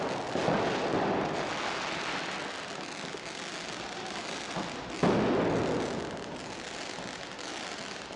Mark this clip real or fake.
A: real